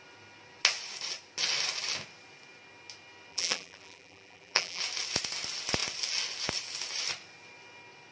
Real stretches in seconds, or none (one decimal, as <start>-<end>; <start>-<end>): 0.0-3.3; 4.8-8.1